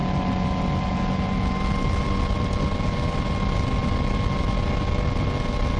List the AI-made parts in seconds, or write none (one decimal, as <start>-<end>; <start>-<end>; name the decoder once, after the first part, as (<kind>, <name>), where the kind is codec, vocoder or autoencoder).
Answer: none